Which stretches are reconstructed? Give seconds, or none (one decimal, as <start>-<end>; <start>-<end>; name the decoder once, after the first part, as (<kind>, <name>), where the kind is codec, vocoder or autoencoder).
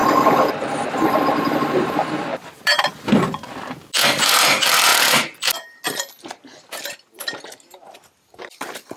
2.3-3.9 (vocoder, BigVGAN v2)